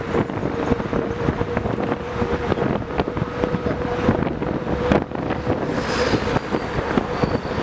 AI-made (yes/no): yes